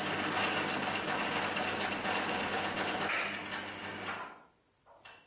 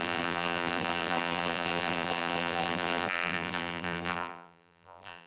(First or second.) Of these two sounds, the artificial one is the second